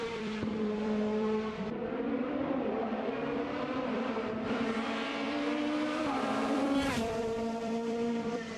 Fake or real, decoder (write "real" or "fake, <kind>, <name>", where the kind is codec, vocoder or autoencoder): fake, vocoder, BigVGAN v2